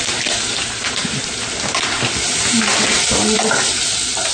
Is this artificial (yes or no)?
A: no